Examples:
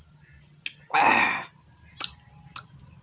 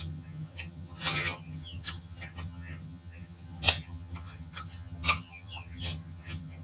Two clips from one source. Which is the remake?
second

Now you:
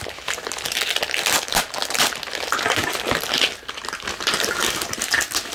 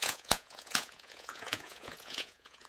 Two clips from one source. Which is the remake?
second